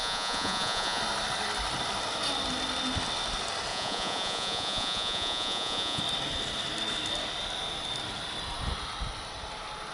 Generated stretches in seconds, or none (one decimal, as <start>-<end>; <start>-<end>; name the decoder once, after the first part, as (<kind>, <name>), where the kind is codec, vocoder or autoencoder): 0.0-1.0 (vocoder, Vocos); 3.7-6.0